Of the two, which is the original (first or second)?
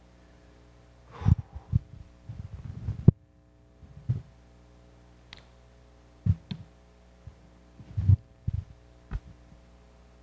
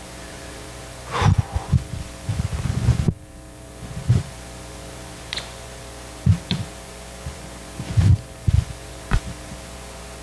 first